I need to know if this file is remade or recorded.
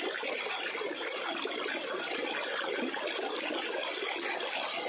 recorded